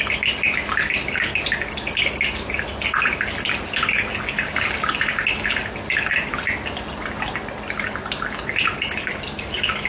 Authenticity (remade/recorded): recorded